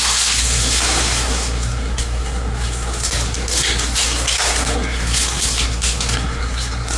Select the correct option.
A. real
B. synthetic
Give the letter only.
B